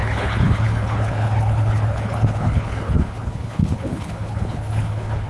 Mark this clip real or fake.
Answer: fake